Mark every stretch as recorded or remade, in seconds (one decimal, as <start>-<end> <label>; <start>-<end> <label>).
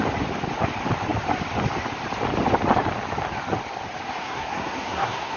0.0-4.2 recorded; 4.2-5.4 remade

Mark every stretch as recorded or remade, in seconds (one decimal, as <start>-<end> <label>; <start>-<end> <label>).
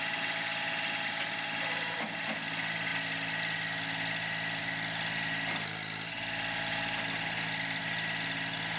0.0-8.8 recorded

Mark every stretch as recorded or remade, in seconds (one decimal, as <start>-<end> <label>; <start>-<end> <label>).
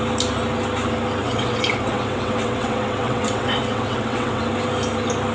0.0-1.2 recorded; 1.2-4.4 remade; 4.4-5.3 recorded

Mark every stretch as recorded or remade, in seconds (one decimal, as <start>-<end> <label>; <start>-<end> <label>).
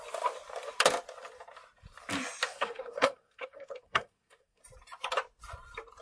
0.0-2.5 recorded; 2.5-4.6 remade; 4.6-6.0 recorded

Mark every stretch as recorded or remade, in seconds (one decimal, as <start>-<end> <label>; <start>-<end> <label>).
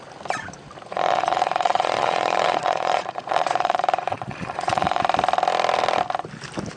0.0-0.9 recorded; 0.9-5.0 remade; 5.0-6.8 recorded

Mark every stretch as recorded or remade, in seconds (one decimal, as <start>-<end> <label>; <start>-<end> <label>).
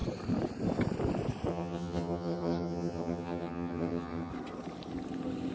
0.0-1.5 recorded; 1.5-4.3 remade; 4.3-5.5 recorded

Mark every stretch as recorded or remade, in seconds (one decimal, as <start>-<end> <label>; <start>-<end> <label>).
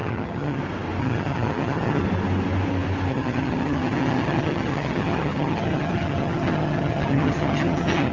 0.0-0.6 remade; 0.6-1.0 recorded; 1.0-2.0 remade; 2.0-3.1 recorded; 3.1-8.1 remade